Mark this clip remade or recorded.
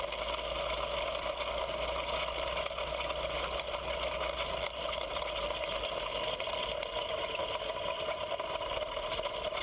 recorded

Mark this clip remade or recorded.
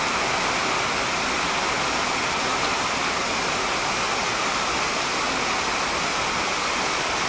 recorded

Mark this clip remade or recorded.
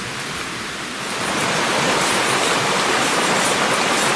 recorded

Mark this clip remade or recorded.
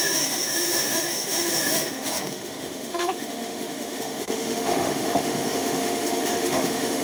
remade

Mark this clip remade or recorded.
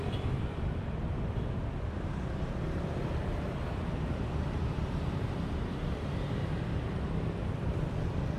remade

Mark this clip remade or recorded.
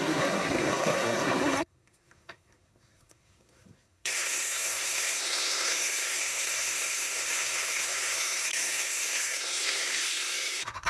remade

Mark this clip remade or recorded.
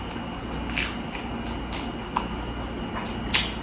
recorded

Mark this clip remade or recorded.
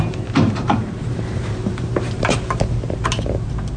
remade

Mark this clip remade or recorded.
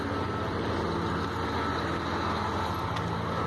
recorded